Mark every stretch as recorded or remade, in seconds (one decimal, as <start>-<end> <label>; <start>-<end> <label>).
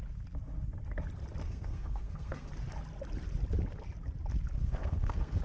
0.0-1.4 recorded; 1.4-2.5 remade; 2.5-4.6 recorded; 4.6-5.4 remade